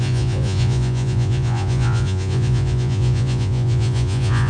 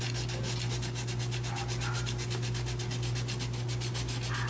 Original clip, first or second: second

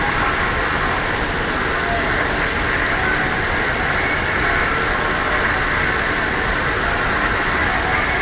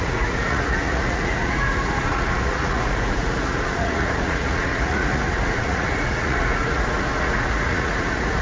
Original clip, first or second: first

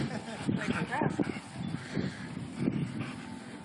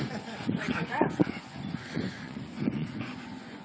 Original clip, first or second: first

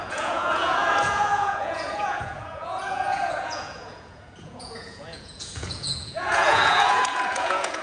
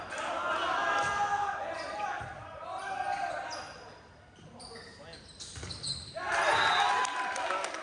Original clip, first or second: second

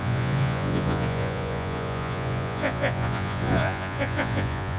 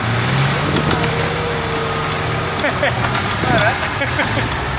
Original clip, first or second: second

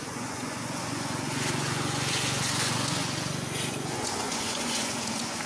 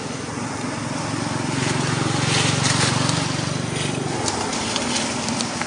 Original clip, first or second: second